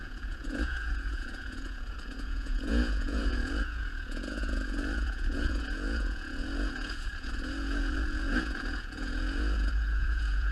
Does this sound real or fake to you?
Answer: fake